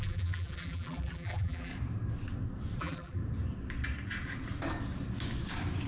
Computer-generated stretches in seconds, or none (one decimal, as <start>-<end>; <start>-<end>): 0.0-1.7; 2.8-3.2